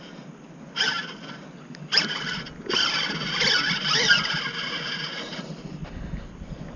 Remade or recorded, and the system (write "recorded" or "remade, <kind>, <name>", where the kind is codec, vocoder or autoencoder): recorded